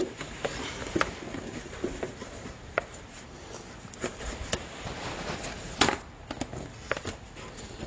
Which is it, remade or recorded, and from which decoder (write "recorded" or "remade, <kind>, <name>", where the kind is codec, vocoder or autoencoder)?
recorded